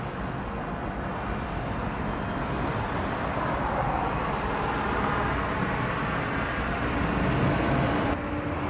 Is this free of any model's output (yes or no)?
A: yes